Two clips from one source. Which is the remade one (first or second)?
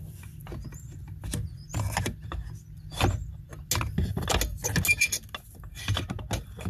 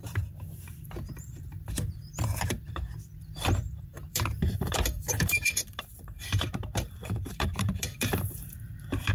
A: second